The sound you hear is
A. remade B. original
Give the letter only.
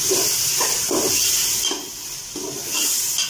B